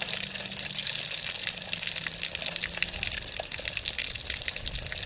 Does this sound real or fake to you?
real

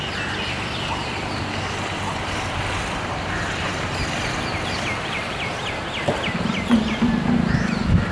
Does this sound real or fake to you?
real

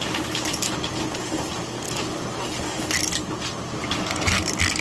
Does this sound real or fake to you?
real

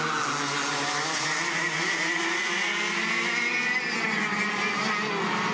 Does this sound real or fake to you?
real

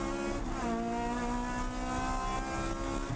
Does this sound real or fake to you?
real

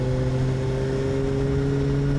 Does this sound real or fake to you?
real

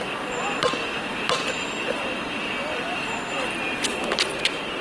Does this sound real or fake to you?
real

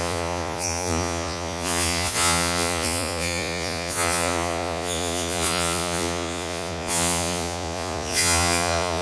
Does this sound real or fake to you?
fake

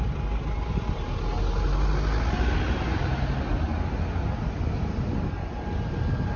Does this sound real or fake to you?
real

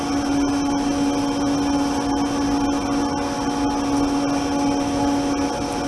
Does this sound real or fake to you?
real